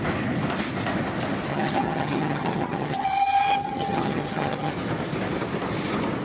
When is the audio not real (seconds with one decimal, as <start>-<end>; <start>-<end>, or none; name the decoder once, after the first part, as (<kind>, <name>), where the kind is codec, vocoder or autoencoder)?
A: 1.5-4.7 (vocoder, HiFi-GAN)